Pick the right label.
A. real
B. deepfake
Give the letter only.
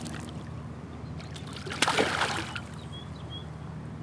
A